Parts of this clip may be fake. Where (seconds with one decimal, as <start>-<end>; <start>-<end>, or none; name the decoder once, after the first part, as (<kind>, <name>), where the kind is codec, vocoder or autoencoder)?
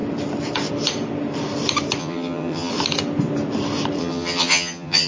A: 2.0-2.7 (vocoder, HiFi-GAN); 4.0-5.1